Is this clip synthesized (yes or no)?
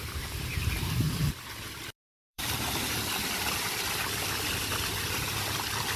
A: yes